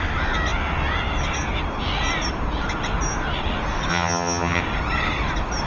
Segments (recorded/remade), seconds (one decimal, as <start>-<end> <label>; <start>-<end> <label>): 0.0-3.9 recorded; 3.9-4.6 remade; 4.6-5.7 recorded